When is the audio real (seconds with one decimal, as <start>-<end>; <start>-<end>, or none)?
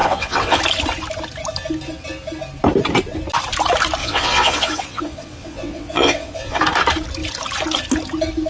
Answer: 0.6-4.0; 6.6-8.5